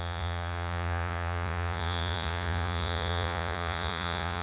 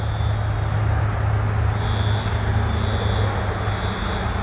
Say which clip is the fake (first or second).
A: first